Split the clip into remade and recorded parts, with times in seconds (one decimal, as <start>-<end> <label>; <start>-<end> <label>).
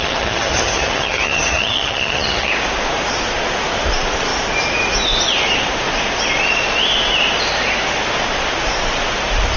0.0-2.5 remade; 2.5-9.6 recorded